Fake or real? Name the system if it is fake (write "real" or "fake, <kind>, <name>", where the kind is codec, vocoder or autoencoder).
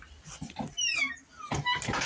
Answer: real